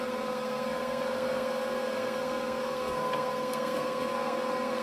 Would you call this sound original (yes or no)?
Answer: no